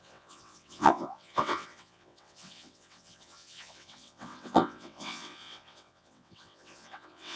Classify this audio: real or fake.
fake